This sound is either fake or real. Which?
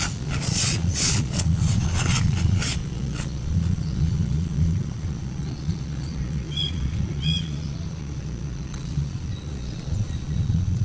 fake